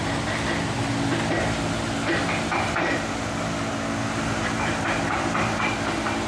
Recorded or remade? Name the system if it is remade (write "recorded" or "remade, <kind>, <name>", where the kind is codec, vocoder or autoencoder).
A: recorded